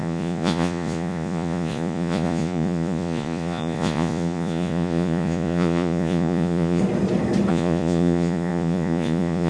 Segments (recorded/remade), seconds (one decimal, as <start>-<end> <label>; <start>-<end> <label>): 0.0-6.8 remade; 6.8-7.5 recorded; 7.5-9.5 remade